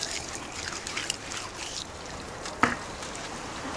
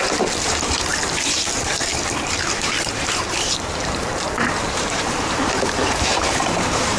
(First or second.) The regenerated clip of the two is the second